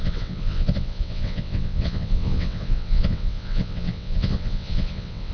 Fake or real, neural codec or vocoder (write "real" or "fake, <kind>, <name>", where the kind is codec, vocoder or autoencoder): fake, vocoder, WaveNeXt